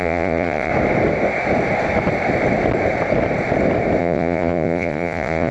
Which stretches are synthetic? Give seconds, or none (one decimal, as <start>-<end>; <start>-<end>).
0.0-0.7; 4.0-5.5